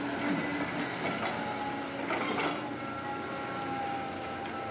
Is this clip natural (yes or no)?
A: yes